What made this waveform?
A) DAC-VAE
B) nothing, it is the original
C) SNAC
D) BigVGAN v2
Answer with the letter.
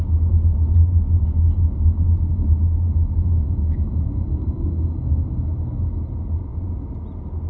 B